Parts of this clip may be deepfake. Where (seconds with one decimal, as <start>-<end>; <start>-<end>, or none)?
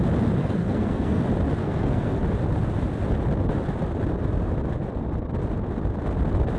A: 0.4-1.2; 1.6-2.2